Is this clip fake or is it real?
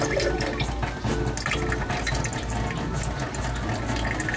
real